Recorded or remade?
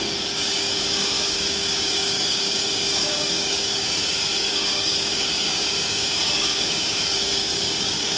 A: remade